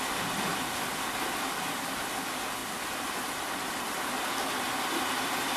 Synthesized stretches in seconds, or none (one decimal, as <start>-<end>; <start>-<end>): none